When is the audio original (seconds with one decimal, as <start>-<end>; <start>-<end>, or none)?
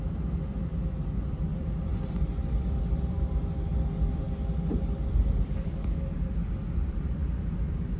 0.7-1.2; 1.9-2.9; 3.7-5.5; 7.2-8.0